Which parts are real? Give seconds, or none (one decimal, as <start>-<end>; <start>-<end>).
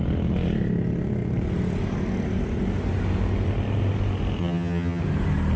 0.0-4.4; 5.0-5.6